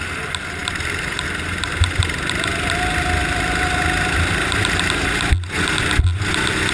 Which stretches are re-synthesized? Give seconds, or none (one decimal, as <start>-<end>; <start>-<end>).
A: none